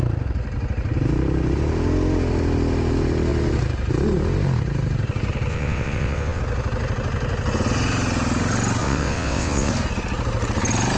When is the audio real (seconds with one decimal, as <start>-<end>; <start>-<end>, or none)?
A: 0.0-5.5; 6.4-8.8; 9.7-11.0